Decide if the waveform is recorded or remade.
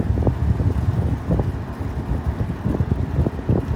recorded